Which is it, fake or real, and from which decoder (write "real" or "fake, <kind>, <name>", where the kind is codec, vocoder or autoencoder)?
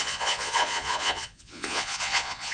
fake, vocoder, Vocos